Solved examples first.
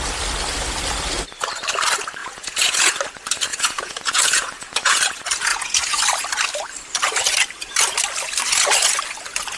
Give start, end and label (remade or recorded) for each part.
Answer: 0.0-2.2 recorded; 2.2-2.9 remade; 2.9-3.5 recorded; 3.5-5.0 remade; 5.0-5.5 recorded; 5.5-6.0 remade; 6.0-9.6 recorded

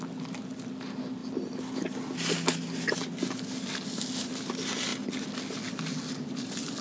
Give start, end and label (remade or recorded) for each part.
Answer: 0.0-6.8 recorded